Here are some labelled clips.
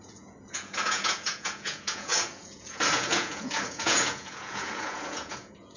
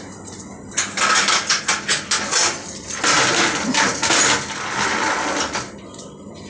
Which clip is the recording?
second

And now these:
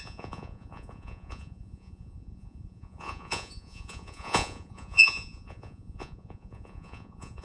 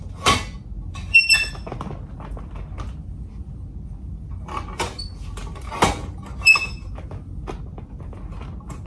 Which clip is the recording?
second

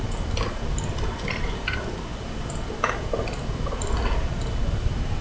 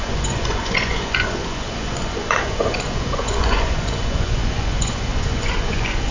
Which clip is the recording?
first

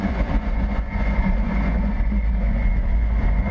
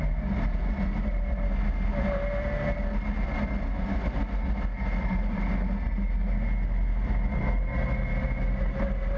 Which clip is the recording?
second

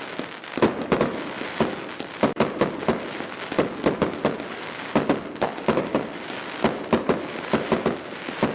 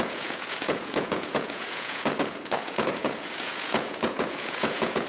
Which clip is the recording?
first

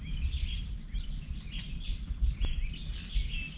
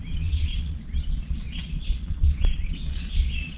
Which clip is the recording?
first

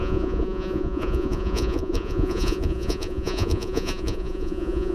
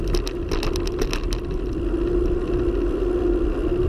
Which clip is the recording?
second